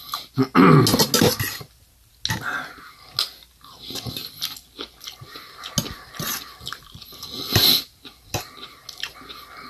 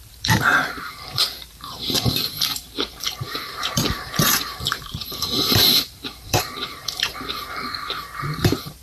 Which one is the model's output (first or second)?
second